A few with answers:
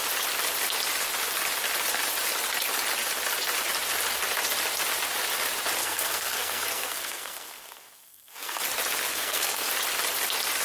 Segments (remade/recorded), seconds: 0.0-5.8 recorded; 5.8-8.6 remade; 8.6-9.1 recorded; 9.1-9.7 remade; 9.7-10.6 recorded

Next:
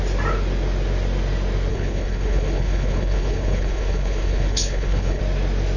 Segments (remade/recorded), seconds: 0.0-1.7 recorded; 1.7-5.2 remade; 5.2-5.8 recorded

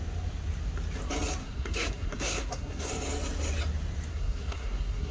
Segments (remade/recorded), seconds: 0.0-1.4 recorded; 1.4-2.9 remade; 2.9-4.1 recorded; 4.1-5.1 remade

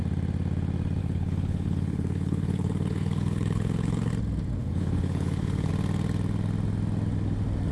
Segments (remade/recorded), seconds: 0.0-1.0 recorded; 1.0-4.1 remade; 4.1-4.6 recorded; 4.6-5.7 remade; 5.7-7.7 recorded

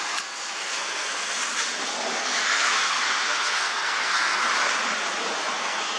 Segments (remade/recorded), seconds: 0.0-1.4 remade; 1.4-2.2 recorded; 2.2-4.4 remade; 4.4-5.6 recorded; 5.6-6.0 remade